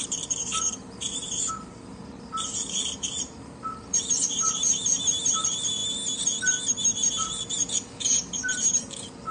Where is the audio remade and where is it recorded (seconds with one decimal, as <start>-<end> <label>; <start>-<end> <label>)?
0.0-5.8 remade; 5.8-7.1 recorded; 7.1-9.3 remade